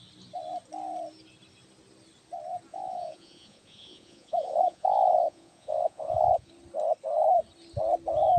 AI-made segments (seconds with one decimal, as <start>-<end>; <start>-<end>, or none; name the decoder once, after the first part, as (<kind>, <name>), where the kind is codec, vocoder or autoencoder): 2.7-6.5 (vocoder, Vocos)